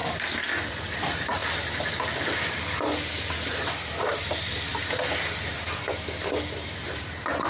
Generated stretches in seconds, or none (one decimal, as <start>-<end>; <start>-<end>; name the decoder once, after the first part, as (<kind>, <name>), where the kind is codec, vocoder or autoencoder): 0.7-1.4 (vocoder, BigVGAN v2); 3.5-4.7; 6.9-7.5